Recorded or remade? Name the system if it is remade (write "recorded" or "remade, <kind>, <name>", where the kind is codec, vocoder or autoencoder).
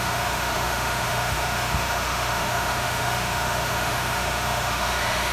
remade, autoencoder, DAC-VAE